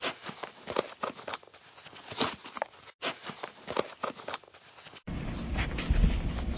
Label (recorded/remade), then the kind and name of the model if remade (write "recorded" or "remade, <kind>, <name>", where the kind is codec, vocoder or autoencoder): recorded